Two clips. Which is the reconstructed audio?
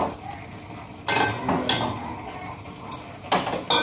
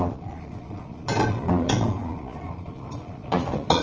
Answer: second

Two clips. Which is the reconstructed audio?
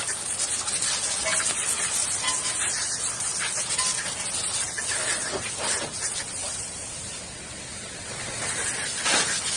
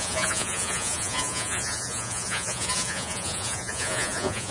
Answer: second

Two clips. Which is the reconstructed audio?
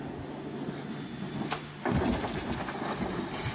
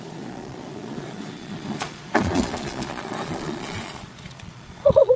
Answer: second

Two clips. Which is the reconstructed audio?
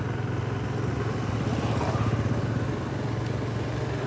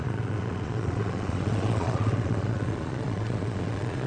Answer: second